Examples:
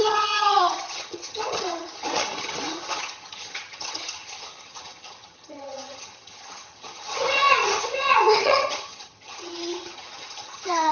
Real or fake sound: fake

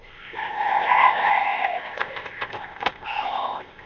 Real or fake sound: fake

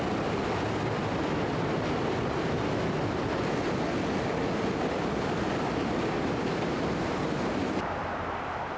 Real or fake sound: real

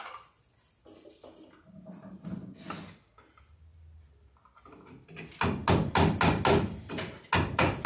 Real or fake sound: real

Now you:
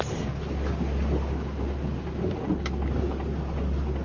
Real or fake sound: real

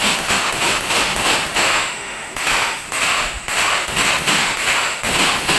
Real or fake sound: fake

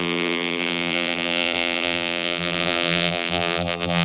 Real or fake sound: fake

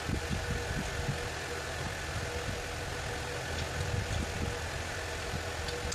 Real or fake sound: real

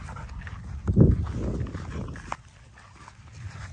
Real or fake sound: real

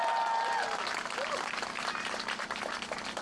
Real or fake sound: real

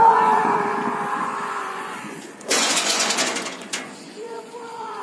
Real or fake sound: fake